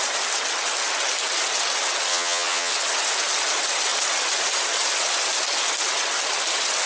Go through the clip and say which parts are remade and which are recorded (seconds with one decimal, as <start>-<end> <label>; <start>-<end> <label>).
0.0-2.1 recorded; 2.1-2.7 remade; 2.7-6.9 recorded